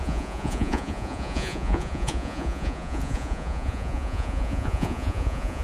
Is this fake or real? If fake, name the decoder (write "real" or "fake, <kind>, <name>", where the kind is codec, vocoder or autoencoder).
fake, vocoder, Vocos